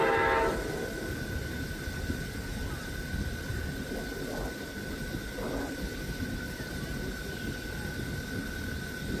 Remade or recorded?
recorded